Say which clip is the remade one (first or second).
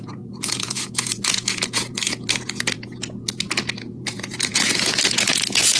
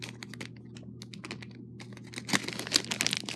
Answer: first